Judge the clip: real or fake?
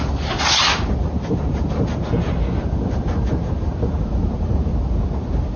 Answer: real